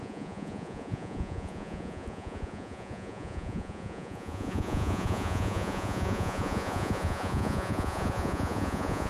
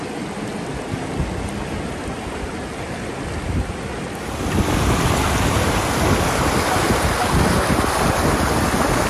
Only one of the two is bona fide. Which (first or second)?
second